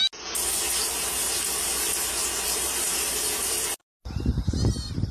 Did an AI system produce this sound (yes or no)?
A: no